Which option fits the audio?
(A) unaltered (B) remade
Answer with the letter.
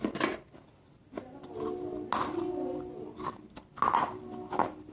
A